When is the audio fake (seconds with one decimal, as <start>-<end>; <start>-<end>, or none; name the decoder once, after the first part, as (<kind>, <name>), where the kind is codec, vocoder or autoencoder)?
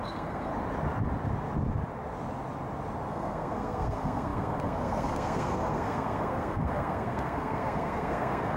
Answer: 0.0-0.5 (codec, SNAC); 3.1-8.6